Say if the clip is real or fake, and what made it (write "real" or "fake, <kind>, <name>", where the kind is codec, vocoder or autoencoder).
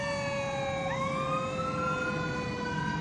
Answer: real